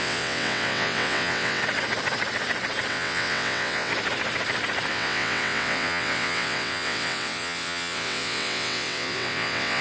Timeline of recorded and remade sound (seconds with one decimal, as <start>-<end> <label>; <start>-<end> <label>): 0.0-1.6 remade; 1.6-2.9 recorded; 2.9-3.9 remade; 3.9-4.9 recorded; 4.9-9.8 remade